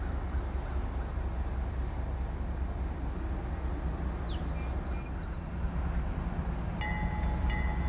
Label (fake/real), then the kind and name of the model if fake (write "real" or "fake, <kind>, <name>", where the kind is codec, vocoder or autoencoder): real